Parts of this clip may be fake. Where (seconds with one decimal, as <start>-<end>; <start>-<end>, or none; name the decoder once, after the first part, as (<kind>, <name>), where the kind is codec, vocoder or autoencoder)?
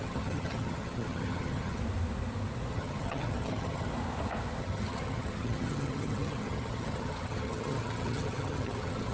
0.0-1.8 (vocoder, HiFi-GAN); 2.7-3.9; 4.6-9.1